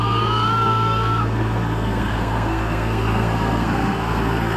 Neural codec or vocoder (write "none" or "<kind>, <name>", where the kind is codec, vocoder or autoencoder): codec, SNAC